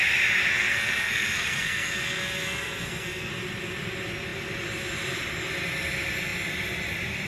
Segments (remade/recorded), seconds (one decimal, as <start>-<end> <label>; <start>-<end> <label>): 0.0-0.4 recorded; 0.4-3.3 remade; 3.3-7.3 recorded

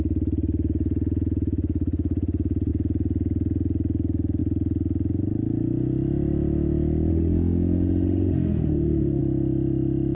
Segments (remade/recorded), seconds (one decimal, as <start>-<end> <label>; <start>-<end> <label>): 0.0-7.1 recorded; 7.1-9.2 remade; 9.2-10.1 recorded

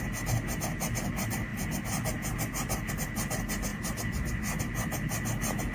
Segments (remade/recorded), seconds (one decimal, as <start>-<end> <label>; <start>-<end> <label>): 0.0-5.7 recorded

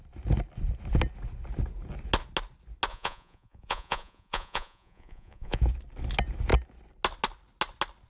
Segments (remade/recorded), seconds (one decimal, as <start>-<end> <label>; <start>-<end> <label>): 0.0-2.9 recorded; 2.9-5.6 remade; 5.6-8.1 recorded

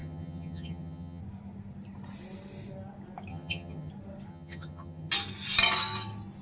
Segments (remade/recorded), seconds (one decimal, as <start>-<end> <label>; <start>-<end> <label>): 0.0-1.2 remade; 1.2-3.3 recorded; 3.3-3.9 remade; 3.9-4.3 recorded; 4.3-5.1 remade; 5.1-6.4 recorded

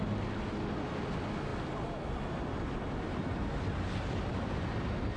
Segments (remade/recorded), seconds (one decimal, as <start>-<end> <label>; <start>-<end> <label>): 0.0-5.2 recorded

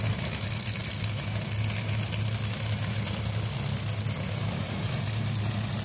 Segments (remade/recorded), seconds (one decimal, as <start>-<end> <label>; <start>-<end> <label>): 0.0-5.8 recorded

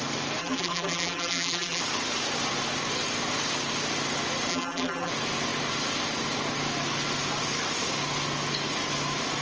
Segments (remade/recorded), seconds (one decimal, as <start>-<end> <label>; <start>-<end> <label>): 0.0-0.4 recorded; 0.4-1.8 remade; 1.8-4.5 recorded; 4.5-5.1 remade; 5.1-9.4 recorded